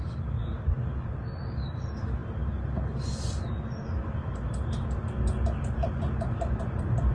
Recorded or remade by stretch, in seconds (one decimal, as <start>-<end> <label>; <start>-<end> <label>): 0.0-7.1 recorded